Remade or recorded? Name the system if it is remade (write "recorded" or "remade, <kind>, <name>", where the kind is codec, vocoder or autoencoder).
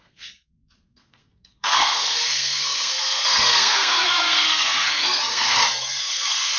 remade, codec, SNAC